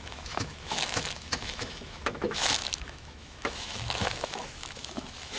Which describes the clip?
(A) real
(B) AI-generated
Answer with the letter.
B